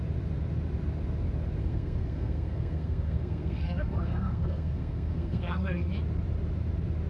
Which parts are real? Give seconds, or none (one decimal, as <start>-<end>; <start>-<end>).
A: 0.0-1.6; 5.9-7.1